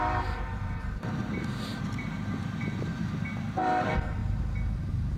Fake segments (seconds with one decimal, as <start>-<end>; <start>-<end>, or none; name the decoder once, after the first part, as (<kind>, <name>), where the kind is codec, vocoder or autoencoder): 0.0-4.2 (vocoder, BigVGAN v2); 4.8-5.2